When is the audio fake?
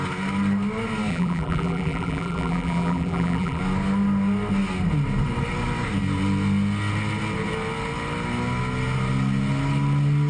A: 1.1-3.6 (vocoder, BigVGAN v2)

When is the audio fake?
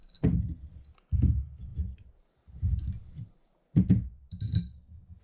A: 4.6-5.2 (codec, DAC)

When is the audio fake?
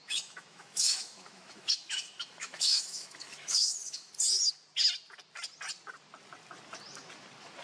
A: 0.0-4.1 (autoencoder, DAC-VAE)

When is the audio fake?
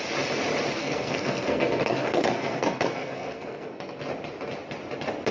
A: 0.8-4.0 (codec, SNAC)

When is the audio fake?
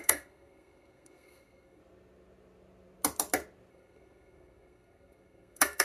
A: 0.0-1.8 (codec, SNAC); 3.7-5.8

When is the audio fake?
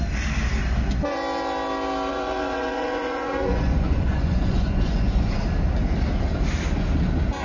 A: 2.1-5.4 (vocoder, Vocos)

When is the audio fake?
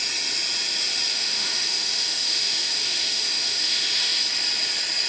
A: 1.1-4.2 (autoencoder, DAC-VAE)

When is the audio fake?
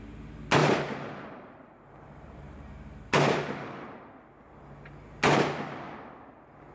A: 0.6-4.0 (vocoder, BigVGAN v2)